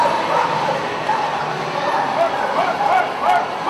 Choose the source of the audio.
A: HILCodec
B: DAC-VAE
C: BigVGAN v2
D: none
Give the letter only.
C